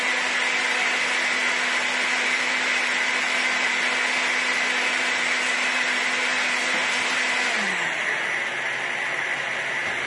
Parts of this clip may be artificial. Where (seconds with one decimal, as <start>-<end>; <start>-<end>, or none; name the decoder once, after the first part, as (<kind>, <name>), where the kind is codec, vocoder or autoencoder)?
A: none